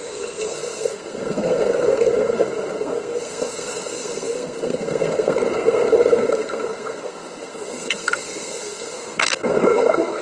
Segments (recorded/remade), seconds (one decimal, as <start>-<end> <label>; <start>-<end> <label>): 0.0-10.2 remade